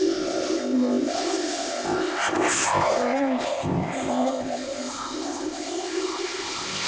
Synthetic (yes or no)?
yes